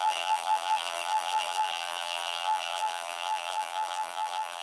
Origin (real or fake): fake